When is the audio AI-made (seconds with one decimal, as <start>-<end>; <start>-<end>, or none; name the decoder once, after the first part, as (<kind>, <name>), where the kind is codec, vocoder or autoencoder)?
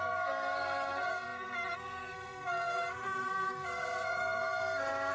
0.0-5.1 (codec, SNAC)